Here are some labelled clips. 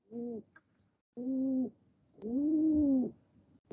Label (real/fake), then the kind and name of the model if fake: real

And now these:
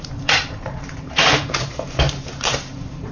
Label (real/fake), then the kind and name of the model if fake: fake, vocoder, BigVGAN v2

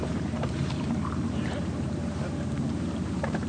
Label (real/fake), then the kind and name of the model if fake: fake, vocoder, BigVGAN v2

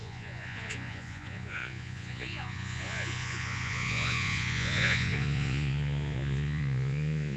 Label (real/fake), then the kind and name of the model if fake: fake, vocoder, Vocos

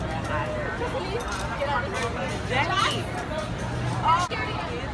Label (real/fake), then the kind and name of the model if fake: real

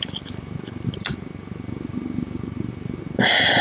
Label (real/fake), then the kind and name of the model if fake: real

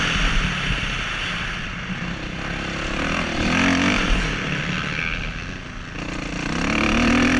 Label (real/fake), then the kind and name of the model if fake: real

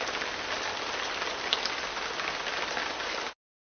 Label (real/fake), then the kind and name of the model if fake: real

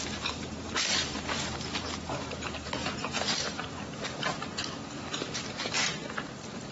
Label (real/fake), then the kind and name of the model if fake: fake, vocoder, BigVGAN v2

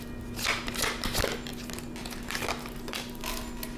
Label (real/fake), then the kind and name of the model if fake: real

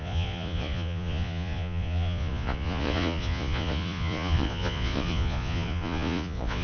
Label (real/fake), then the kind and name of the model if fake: fake, vocoder, Vocos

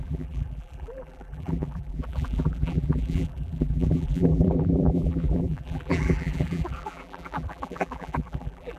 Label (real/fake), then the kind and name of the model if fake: fake, vocoder, BigVGAN v2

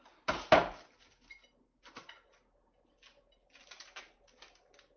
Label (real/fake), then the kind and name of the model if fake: real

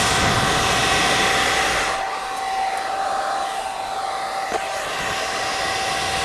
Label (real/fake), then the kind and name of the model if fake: real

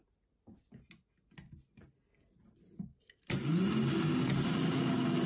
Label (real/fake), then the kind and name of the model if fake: real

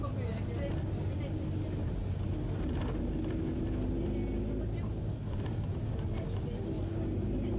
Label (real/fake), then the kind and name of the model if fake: real